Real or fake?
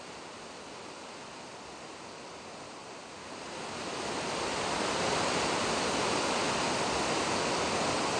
real